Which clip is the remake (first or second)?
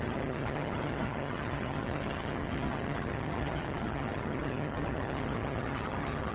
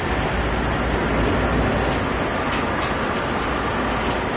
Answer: first